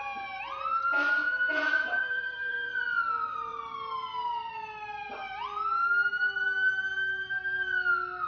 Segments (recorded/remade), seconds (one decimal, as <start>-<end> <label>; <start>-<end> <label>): 0.0-1.2 recorded; 1.2-2.8 remade; 2.8-8.3 recorded